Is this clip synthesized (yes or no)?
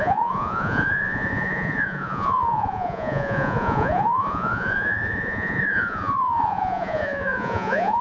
yes